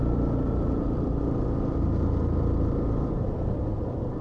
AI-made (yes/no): no